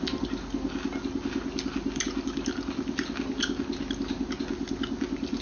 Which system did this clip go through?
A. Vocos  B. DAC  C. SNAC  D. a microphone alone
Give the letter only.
D